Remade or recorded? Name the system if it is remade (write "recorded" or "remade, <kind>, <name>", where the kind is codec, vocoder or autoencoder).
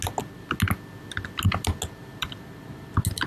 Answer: recorded